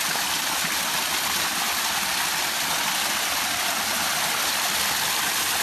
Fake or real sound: real